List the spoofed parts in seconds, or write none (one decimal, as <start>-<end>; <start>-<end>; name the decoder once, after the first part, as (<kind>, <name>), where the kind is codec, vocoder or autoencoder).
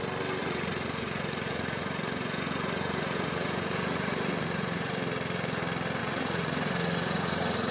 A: 0.4-4.9 (vocoder, Vocos); 6.0-7.7